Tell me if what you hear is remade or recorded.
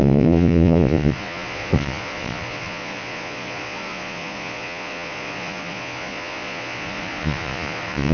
remade